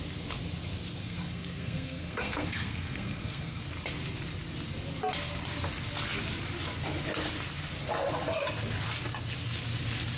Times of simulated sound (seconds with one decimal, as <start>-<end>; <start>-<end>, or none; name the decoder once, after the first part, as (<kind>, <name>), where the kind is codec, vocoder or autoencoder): 1.0-3.6 (codec, SNAC)